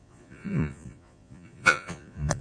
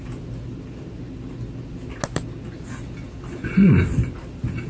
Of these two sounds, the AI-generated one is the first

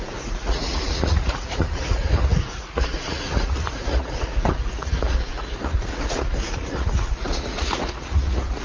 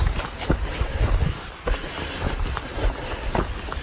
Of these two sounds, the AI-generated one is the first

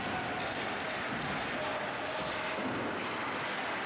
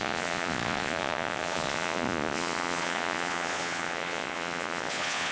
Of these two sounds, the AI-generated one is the second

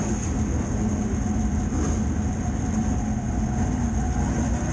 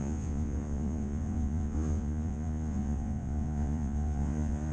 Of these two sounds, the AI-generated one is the second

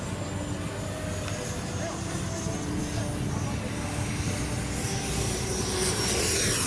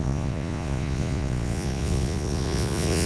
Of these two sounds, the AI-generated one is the second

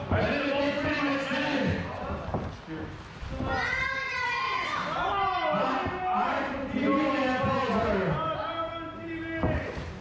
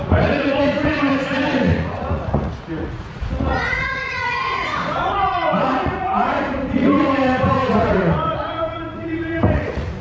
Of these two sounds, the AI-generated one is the second